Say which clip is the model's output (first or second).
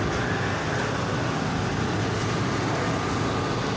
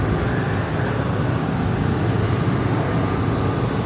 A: second